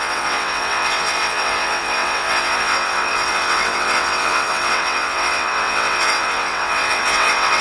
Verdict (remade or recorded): remade